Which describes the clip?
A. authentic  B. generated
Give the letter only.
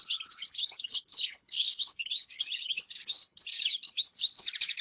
B